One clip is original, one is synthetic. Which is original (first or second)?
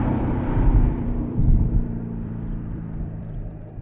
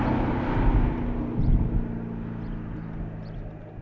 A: second